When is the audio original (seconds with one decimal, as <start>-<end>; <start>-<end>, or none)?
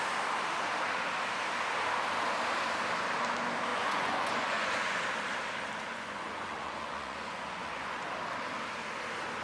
0.0-3.7; 5.0-5.9; 8.0-9.4